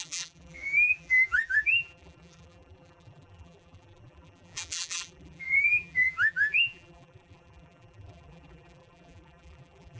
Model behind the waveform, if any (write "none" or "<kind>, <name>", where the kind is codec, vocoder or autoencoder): vocoder, BigVGAN v2